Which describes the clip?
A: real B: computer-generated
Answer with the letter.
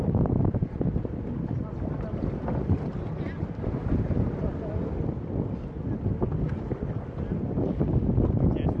A